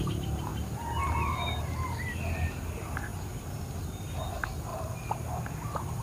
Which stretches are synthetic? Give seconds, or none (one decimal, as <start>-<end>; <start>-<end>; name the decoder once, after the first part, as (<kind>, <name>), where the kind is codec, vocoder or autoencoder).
3.1-3.8 (vocoder, BigVGAN v2)